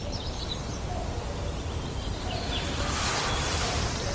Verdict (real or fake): fake